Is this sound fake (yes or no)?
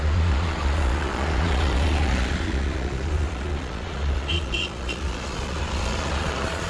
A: yes